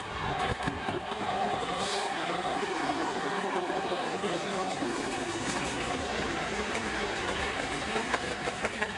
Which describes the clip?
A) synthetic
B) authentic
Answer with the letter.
A